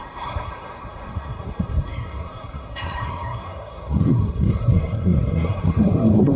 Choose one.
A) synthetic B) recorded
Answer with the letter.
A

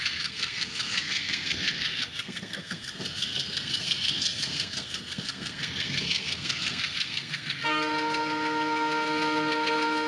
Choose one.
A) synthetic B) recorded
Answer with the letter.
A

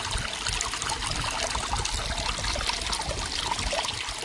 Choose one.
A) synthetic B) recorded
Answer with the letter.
B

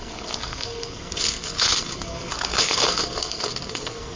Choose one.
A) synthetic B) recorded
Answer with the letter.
A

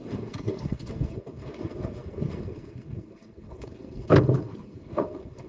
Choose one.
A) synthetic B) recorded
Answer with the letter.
A